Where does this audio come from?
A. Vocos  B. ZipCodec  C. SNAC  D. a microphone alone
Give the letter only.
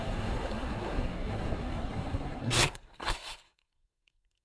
C